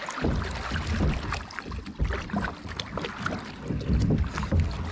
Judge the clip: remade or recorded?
recorded